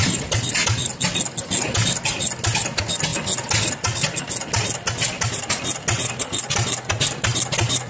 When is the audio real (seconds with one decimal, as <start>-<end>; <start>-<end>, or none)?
0.0-7.9